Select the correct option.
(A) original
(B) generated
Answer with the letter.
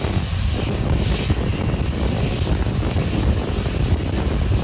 A